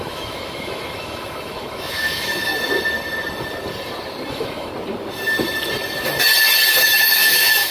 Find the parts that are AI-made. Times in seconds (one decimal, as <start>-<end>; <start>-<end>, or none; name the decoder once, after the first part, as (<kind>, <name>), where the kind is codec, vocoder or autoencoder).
0.0-2.5 (autoencoder, DAC-VAE); 4.3-4.7; 6.8-7.7